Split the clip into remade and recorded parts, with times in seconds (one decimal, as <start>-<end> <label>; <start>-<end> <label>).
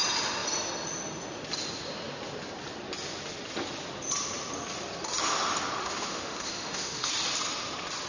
0.0-5.8 recorded; 5.8-7.1 remade; 7.1-8.1 recorded